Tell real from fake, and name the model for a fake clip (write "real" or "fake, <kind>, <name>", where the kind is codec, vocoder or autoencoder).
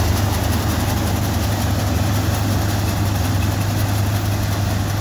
real